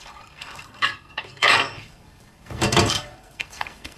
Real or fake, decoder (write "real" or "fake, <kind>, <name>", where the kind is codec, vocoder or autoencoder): fake, codec, SNAC